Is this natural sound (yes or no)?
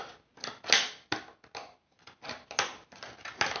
yes